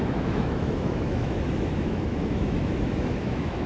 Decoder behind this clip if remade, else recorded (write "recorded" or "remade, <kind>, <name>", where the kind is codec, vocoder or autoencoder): remade, autoencoder, DAC-VAE